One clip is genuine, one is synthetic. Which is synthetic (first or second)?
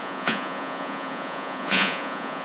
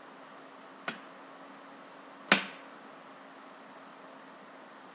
first